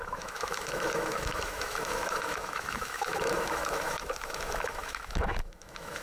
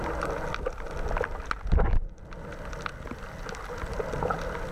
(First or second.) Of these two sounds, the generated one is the first